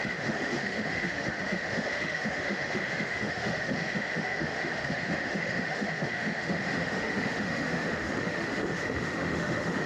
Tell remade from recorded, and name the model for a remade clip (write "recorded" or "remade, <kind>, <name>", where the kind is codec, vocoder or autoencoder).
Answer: remade, autoencoder, DAC-VAE